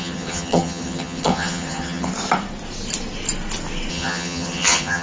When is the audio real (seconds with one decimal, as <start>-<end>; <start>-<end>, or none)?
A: 2.1-3.9